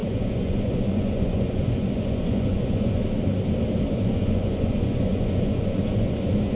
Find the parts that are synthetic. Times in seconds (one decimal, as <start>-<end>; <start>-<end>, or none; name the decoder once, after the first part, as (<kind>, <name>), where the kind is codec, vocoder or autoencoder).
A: 0.0-3.0 (vocoder, Vocos); 3.9-6.6

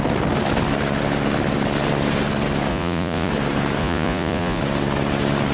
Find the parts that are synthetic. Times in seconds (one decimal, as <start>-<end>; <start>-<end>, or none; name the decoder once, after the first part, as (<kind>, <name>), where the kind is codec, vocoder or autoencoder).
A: 2.7-3.3 (vocoder, Vocos); 3.8-4.6

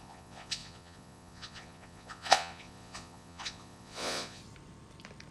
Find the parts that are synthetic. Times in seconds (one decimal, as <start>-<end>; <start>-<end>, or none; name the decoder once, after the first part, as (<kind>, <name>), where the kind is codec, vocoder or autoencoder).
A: 0.0-4.4 (vocoder, Vocos)

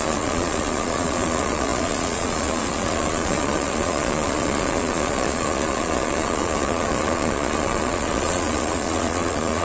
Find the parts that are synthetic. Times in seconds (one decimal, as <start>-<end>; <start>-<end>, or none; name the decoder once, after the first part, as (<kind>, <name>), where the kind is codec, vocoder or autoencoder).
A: 0.0-9.6 (vocoder, Vocos)

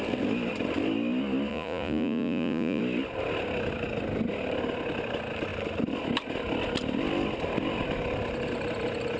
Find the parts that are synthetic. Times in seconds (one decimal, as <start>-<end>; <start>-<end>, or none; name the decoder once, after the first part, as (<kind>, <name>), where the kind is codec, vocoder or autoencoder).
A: 1.5-2.8 (vocoder, Vocos)

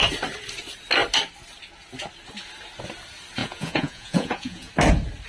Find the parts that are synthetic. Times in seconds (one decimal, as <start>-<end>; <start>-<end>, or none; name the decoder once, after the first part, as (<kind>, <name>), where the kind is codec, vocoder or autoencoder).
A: 3.4-4.7 (vocoder, Vocos)